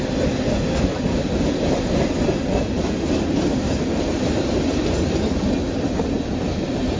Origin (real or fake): real